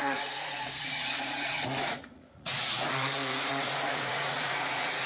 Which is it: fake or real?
fake